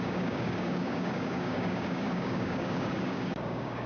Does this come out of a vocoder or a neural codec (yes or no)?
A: yes